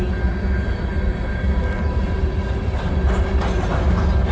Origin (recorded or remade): recorded